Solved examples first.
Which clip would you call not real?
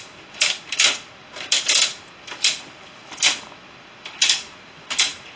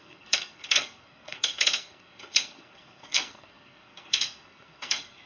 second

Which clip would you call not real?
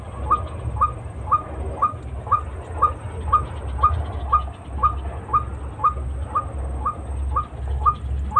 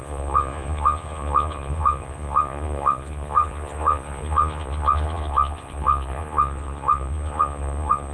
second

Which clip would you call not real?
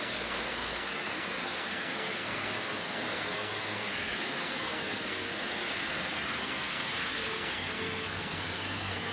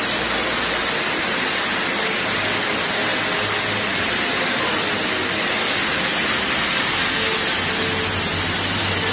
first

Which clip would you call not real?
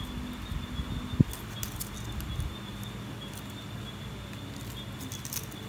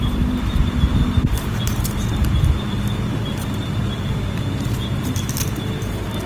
second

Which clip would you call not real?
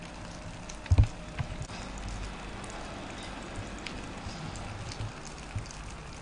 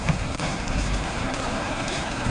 second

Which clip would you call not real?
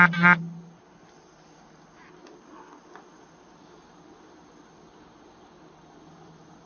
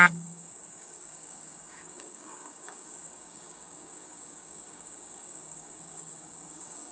second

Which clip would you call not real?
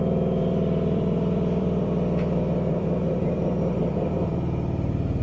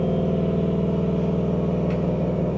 first